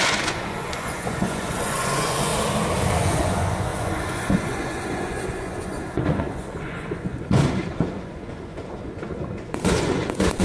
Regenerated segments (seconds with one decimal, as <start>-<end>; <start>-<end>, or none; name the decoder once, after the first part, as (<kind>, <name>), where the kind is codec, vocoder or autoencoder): 0.0-2.3 (vocoder, Vocos); 3.0-10.4